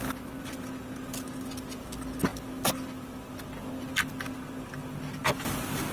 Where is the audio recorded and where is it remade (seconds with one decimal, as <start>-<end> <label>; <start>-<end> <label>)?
0.0-5.9 recorded